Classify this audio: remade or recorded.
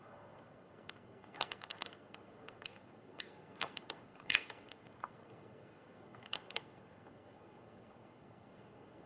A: remade